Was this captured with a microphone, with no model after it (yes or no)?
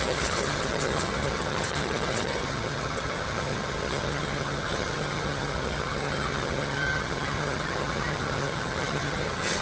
no